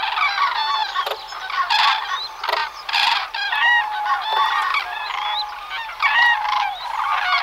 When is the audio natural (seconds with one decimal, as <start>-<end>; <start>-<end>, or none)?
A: 0.0-2.6; 3.3-7.4